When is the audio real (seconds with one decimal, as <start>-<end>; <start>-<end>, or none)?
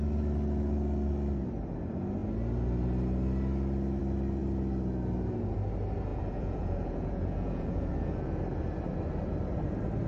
0.0-6.1; 8.4-10.1